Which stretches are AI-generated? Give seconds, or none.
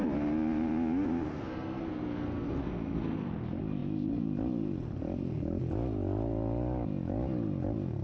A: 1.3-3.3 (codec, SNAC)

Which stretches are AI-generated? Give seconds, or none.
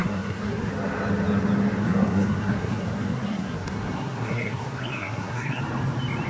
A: 0.0-0.7 (codec, SNAC); 1.8-5.6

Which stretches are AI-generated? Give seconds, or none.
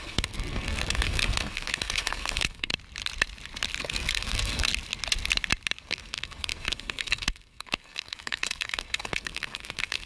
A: 0.0-2.7 (codec, SNAC); 3.8-4.7; 5.8-10.1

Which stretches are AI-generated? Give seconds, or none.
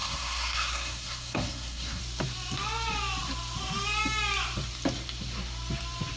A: 0.0-2.0 (codec, SNAC)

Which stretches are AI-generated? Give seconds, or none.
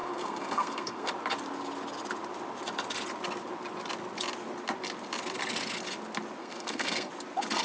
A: 0.0-1.1 (codec, SNAC); 6.4-7.1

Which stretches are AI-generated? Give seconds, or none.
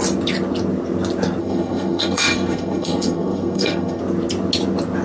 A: 1.4-4.0 (codec, SNAC)